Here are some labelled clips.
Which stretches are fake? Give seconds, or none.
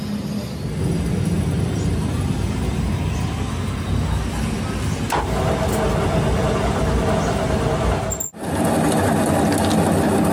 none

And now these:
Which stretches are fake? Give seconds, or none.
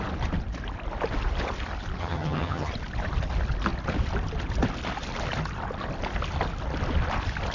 2.0-2.7 (vocoder, HiFi-GAN)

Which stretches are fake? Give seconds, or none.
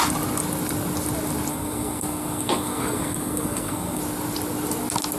1.5-4.0 (codec, SNAC)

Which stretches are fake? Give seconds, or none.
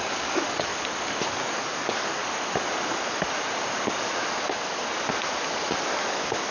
0.0-0.7 (codec, DAC); 1.3-2.2; 6.1-6.5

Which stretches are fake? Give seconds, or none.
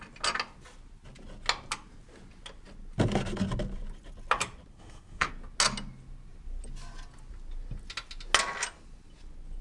4.7-5.3 (codec, SNAC)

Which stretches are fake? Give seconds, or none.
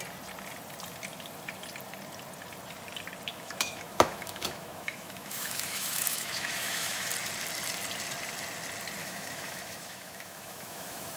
3.3-7.1 (autoencoder, DAC-VAE); 9.0-11.2